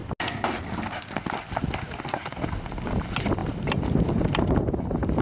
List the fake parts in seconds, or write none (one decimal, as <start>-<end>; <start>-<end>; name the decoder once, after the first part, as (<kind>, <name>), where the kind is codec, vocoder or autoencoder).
3.4-5.2 (vocoder, BigVGAN v2)